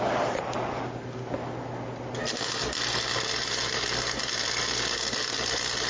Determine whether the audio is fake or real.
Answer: real